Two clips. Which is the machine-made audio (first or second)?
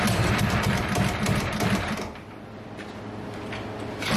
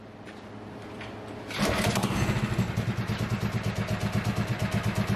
first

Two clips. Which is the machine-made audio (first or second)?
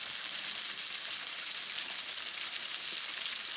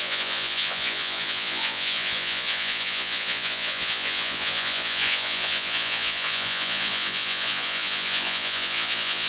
second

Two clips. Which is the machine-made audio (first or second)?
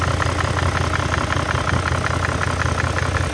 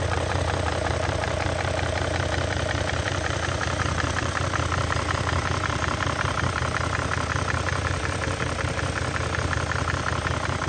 second